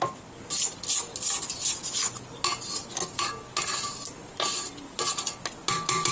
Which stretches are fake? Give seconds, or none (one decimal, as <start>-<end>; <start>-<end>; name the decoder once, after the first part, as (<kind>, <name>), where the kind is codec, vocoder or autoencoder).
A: none